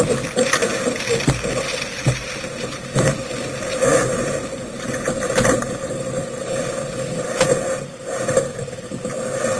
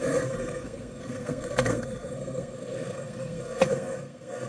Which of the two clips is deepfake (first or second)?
second